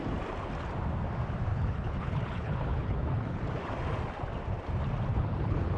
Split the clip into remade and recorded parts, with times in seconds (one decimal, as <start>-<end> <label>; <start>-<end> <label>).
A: 0.0-1.5 recorded; 1.5-3.4 remade; 3.4-5.1 recorded; 5.1-5.8 remade